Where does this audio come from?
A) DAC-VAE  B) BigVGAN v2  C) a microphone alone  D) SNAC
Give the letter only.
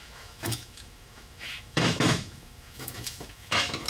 A